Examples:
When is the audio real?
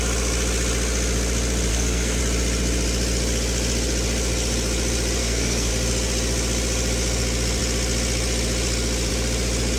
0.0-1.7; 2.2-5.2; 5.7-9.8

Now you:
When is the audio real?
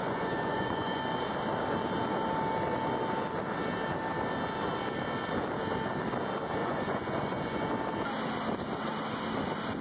1.0-6.6; 7.7-9.8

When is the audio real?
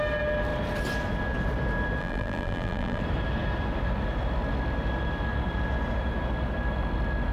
0.0-2.0; 3.0-7.3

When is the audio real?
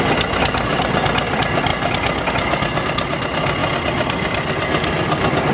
0.0-5.5